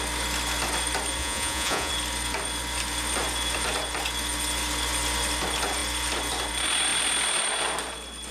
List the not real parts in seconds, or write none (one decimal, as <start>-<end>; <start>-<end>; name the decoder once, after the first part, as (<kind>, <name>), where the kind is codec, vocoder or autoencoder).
1.2-1.9 (vocoder, Vocos)